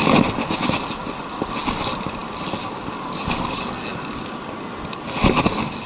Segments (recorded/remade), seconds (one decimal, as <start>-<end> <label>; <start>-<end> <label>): 0.0-5.9 recorded